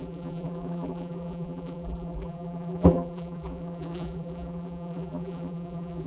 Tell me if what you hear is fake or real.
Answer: fake